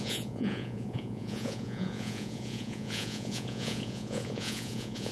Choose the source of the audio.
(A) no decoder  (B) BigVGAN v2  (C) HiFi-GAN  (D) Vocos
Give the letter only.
D